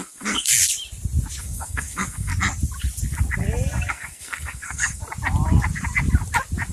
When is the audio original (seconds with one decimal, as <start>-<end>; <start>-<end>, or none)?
0.6-1.4; 2.3-3.9; 5.0-6.7

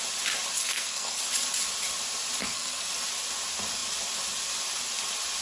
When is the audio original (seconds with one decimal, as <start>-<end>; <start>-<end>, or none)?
0.0-0.6; 1.2-2.4; 2.9-5.4

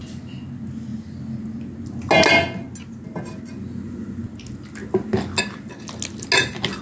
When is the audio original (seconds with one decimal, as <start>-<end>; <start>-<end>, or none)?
0.0-6.8

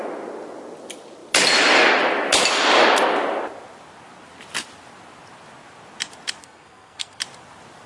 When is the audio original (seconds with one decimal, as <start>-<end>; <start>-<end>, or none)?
0.0-6.4; 7.2-7.9

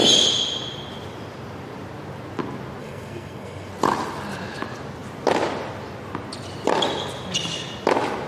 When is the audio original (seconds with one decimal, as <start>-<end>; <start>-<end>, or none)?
0.0-2.8; 3.7-8.3

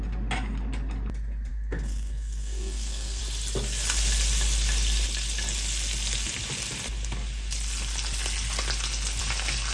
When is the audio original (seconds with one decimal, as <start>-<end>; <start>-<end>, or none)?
0.0-1.5; 3.2-9.7

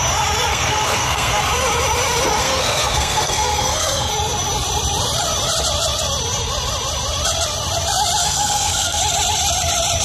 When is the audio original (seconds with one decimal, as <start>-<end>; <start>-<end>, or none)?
0.0-0.5; 1.4-2.4; 4.1-8.2; 9.0-10.0

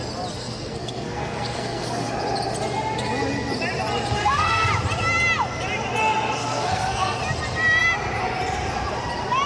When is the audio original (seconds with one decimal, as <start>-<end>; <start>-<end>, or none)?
0.0-0.4; 2.1-4.2; 4.7-6.4; 7.2-9.5